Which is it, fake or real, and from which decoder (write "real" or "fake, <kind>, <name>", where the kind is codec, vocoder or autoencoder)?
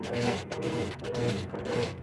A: fake, codec, SNAC